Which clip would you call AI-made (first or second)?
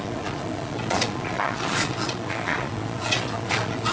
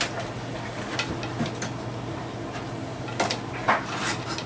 first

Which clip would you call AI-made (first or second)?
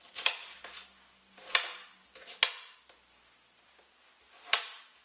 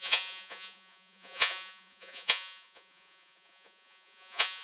second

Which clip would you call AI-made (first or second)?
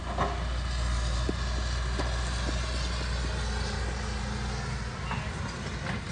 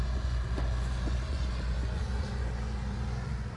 second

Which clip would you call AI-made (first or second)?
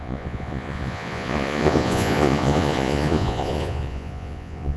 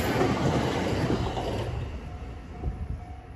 first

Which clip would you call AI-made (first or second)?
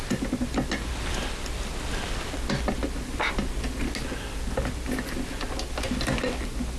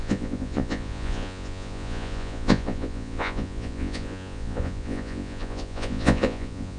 second